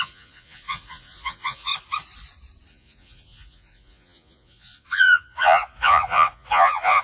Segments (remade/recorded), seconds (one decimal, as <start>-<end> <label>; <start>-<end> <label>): 0.0-1.7 remade; 1.7-2.7 recorded; 2.7-7.0 remade